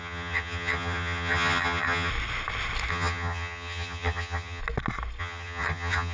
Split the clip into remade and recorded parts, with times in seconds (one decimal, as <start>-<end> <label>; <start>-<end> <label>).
0.0-2.1 remade; 2.1-2.9 recorded; 2.9-4.6 remade; 4.6-5.2 recorded; 5.2-6.1 remade